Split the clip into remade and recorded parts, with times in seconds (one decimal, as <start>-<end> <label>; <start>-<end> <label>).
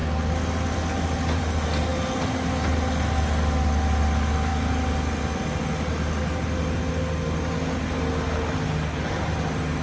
0.0-9.8 recorded